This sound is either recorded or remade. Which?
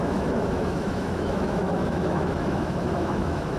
remade